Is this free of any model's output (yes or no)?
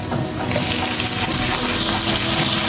yes